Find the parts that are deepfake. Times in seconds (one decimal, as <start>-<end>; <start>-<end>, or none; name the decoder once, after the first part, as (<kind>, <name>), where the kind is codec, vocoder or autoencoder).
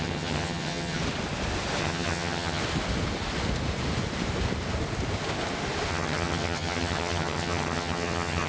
0.0-1.0 (vocoder, HiFi-GAN); 1.8-2.6; 5.9-8.5